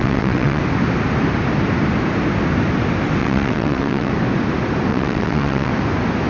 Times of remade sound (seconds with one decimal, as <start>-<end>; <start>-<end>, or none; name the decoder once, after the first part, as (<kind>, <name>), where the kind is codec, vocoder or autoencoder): 0.0-0.6 (vocoder, WaveNeXt); 3.2-4.1; 4.9-5.7